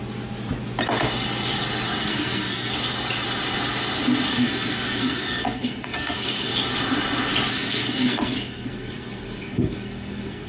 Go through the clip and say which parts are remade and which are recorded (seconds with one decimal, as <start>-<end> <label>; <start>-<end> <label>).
0.0-2.0 recorded; 2.0-2.7 remade; 2.7-4.3 recorded; 4.3-6.5 remade; 6.5-7.5 recorded; 7.5-10.5 remade